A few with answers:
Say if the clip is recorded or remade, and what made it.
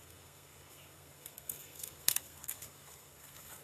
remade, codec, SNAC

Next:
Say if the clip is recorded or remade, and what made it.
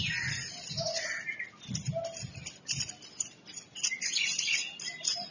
recorded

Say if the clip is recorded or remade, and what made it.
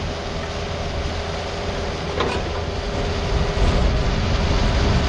recorded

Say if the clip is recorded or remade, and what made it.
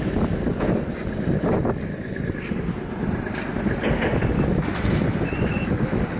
recorded